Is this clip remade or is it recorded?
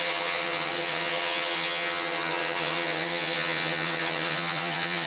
remade